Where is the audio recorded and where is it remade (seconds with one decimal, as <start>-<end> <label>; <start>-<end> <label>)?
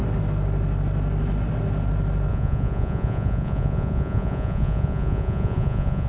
0.0-2.3 recorded; 2.3-6.1 remade